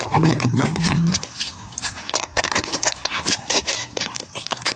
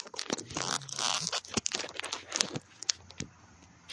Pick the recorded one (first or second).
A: second